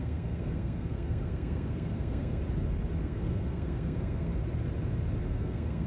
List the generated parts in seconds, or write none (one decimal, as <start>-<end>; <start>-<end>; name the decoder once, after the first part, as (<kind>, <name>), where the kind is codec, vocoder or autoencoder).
0.0-2.4 (codec, SNAC); 3.0-4.3; 5.2-5.9